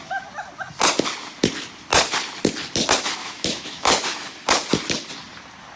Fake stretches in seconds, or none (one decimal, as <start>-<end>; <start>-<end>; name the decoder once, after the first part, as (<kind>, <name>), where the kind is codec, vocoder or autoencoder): 3.2-3.9 (autoencoder, DAC-VAE)